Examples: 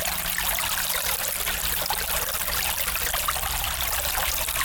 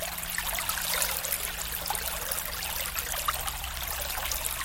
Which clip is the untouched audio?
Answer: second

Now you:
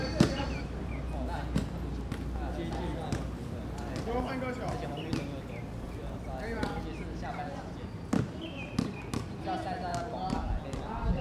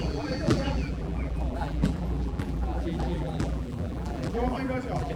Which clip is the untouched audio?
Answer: first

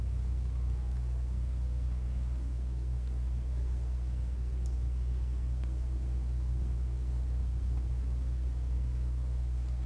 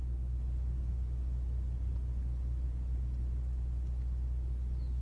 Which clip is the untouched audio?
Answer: second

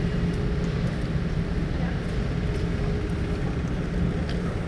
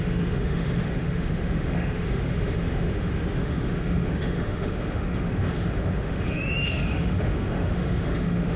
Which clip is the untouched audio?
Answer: first